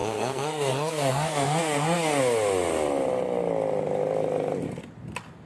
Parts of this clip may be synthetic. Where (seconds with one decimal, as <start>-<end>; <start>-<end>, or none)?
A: 0.0-2.2